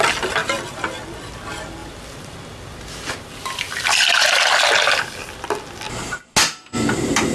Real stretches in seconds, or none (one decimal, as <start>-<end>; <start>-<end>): 0.0-7.3